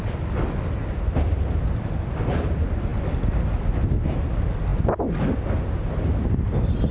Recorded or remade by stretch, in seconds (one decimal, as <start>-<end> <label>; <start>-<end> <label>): 0.0-6.9 recorded